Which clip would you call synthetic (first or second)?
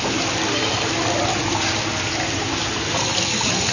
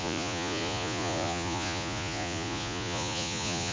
second